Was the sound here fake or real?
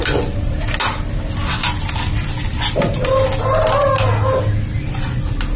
real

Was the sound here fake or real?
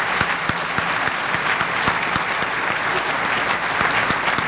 real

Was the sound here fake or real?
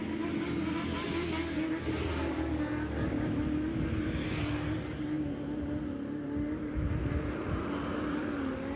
real